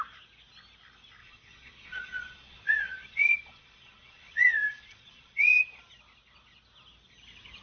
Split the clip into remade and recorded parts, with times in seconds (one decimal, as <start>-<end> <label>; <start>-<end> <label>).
0.0-1.2 recorded; 1.2-5.8 remade; 5.8-7.6 recorded